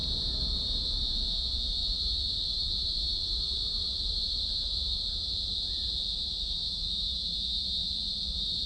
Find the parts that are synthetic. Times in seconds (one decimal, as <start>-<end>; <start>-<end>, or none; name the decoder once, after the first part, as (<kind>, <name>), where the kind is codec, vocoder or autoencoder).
1.8-7.0 (vocoder, BigVGAN v2); 7.8-8.7